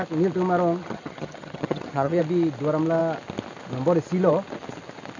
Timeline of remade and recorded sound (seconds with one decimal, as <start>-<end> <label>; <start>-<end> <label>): 0.0-0.8 recorded; 0.8-2.2 remade; 2.2-5.2 recorded